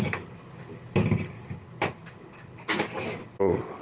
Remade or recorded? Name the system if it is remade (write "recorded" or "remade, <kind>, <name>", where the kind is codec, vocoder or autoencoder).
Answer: recorded